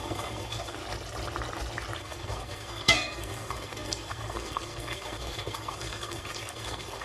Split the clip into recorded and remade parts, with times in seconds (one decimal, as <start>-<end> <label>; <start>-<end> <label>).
0.0-0.8 remade; 0.8-2.0 recorded; 2.0-7.0 remade